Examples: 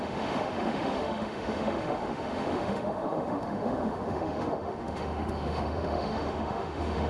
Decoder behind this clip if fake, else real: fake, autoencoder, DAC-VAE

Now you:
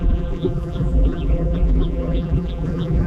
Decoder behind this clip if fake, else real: fake, vocoder, BigVGAN v2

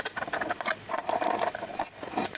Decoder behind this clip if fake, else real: fake, vocoder, BigVGAN v2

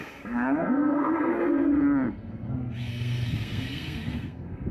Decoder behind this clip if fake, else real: fake, codec, SNAC